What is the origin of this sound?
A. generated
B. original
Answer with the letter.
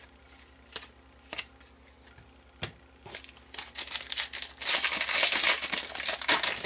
B